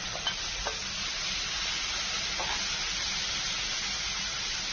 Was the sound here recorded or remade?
recorded